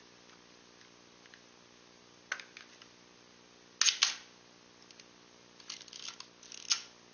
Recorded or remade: recorded